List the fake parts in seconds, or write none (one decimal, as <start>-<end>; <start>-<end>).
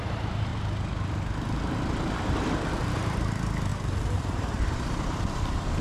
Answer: 0.0-0.5; 2.7-5.8